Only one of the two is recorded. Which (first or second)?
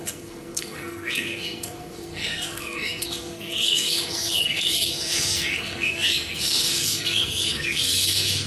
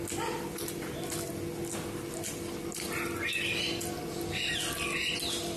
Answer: second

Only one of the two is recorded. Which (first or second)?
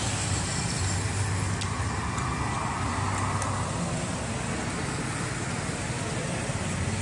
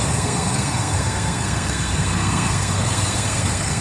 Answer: first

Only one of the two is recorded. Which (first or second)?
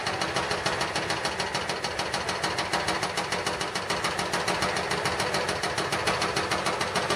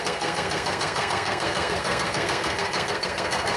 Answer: first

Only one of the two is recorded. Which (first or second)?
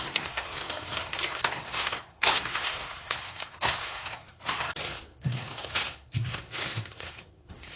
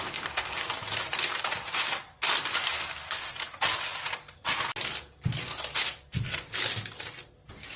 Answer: second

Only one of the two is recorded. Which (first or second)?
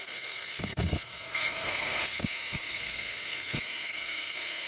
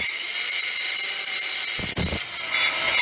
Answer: second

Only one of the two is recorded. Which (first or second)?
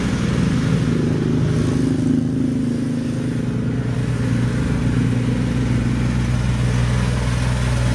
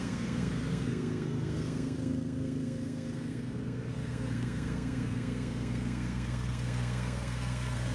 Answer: first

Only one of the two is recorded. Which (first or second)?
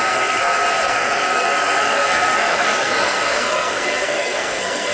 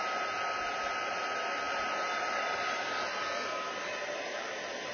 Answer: second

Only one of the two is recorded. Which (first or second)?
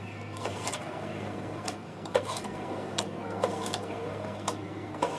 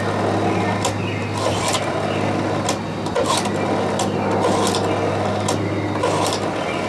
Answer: second